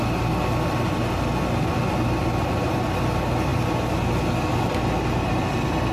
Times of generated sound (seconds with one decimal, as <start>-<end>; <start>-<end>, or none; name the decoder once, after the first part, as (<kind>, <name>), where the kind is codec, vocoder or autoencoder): none